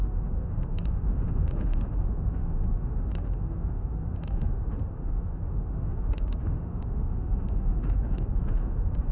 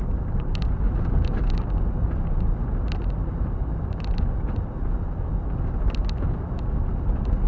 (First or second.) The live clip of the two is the second